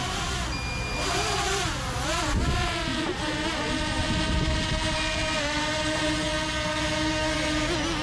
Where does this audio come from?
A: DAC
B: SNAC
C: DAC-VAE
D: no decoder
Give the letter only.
D